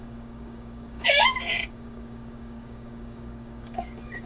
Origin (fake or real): fake